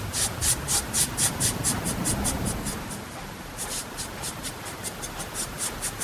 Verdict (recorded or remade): recorded